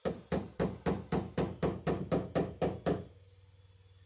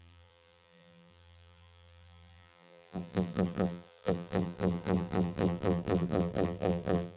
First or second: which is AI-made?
second